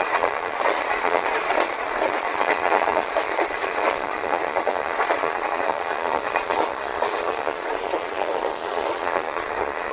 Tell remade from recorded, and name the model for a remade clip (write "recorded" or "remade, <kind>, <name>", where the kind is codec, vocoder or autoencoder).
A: remade, vocoder, Vocos